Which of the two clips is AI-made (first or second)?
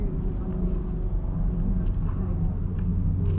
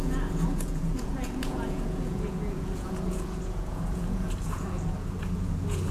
second